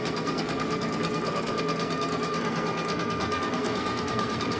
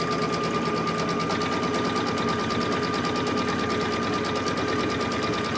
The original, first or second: second